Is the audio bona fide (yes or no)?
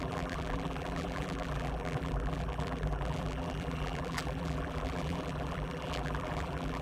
no